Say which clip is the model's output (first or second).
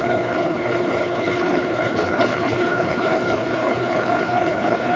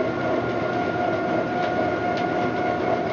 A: first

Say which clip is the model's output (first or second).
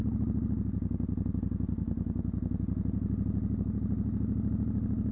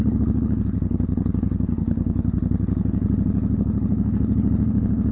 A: second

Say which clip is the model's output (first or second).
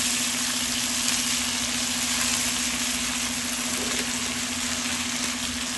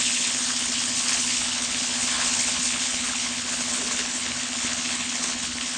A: second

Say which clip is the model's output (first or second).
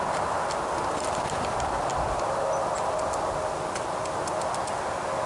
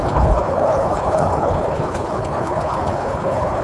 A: second